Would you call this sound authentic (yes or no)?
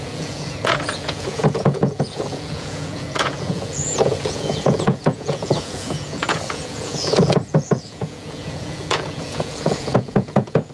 no